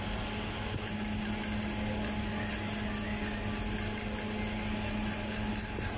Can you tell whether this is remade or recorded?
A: recorded